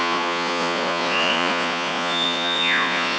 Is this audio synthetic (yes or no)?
yes